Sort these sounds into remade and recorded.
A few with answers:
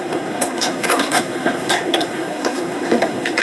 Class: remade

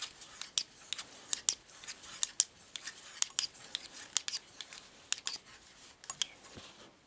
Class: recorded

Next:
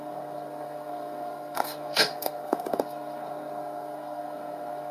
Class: remade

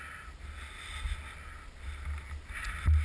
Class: recorded